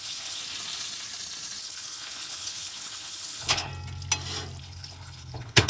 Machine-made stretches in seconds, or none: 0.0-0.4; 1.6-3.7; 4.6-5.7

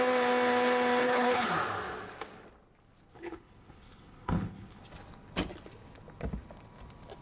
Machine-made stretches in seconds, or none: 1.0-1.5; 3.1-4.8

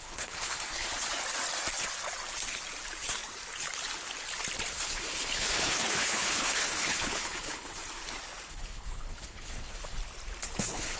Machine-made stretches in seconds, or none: 0.0-0.9; 4.7-7.8; 8.5-10.0; 10.6-11.0

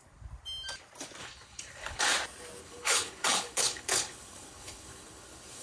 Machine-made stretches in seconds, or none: 1.2-2.0; 2.6-5.6